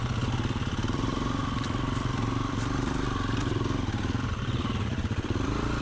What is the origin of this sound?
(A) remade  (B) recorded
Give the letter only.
A